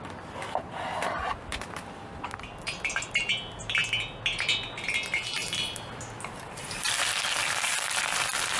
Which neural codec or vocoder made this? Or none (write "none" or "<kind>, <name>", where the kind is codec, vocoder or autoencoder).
none